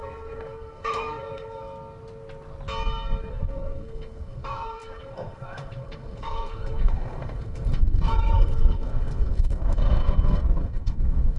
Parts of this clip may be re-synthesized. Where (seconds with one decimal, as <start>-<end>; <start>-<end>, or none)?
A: 0.0-1.6; 3.3-11.4